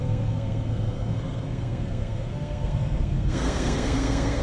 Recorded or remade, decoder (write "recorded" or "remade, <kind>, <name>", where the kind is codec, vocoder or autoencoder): remade, codec, SNAC